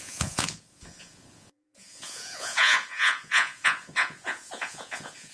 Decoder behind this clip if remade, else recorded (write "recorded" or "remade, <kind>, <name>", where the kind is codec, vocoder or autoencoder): remade, vocoder, Vocos